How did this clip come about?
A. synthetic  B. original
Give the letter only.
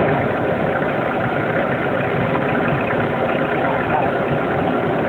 B